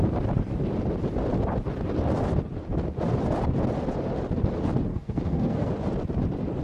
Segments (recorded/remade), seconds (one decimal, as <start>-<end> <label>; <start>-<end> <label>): 0.0-4.9 recorded; 4.9-5.7 remade; 5.7-6.6 recorded

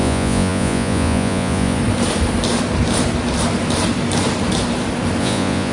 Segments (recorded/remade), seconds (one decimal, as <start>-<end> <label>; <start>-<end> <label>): 0.0-1.8 remade; 1.8-5.2 recorded; 5.2-5.7 remade

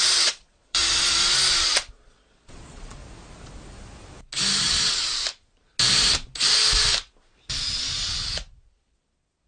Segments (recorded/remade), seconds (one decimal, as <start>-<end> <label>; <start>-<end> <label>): 0.0-0.8 remade; 0.8-1.9 recorded; 1.9-3.0 remade; 3.0-4.6 recorded; 4.6-5.1 remade; 5.1-8.8 recorded; 8.8-9.5 remade

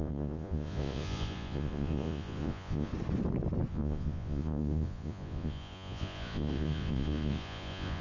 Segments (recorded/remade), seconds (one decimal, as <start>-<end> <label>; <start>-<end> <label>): 0.0-2.9 remade; 2.9-3.7 recorded; 3.7-8.0 remade